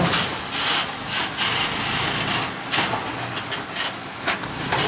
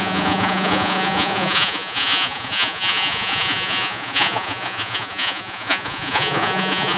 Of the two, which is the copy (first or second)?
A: second